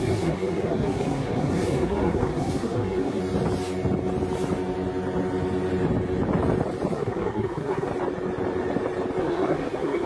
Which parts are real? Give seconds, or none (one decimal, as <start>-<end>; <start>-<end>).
3.2-6.9; 7.9-9.2

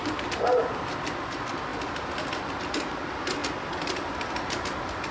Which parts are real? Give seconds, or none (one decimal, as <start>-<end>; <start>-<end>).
0.0-5.1